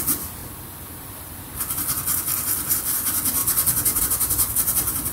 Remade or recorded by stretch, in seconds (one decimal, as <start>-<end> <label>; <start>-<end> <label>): 0.0-0.4 recorded; 0.4-1.4 remade; 1.4-5.1 recorded